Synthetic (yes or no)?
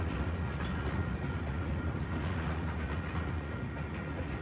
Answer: yes